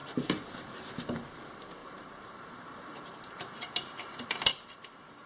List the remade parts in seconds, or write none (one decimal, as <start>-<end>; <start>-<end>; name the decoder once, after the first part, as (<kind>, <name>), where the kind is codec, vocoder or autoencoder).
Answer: 0.0-0.9 (vocoder, BigVGAN v2); 1.8-3.5